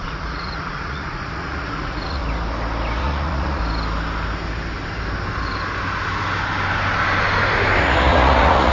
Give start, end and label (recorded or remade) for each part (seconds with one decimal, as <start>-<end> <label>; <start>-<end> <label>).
0.0-2.2 remade; 2.2-3.0 recorded; 3.0-3.6 remade; 3.6-7.8 recorded; 7.8-8.7 remade